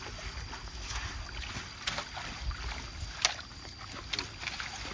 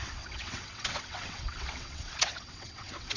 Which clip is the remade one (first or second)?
second